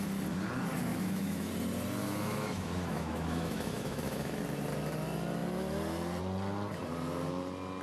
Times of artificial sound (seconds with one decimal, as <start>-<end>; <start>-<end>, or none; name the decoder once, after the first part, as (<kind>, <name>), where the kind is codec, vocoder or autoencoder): 0.9-1.5 (autoencoder, DAC-VAE); 2.0-4.4